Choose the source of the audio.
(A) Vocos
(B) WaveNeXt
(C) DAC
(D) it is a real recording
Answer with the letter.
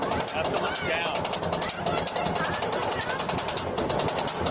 D